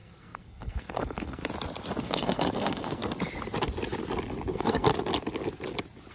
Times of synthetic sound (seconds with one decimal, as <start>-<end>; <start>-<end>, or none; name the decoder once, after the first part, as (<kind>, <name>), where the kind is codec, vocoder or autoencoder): 0.0-1.4 (codec, SNAC); 2.0-3.0; 4.5-4.9